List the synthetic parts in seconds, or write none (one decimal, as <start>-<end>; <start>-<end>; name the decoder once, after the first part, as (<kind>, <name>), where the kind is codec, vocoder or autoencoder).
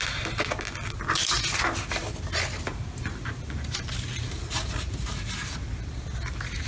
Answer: none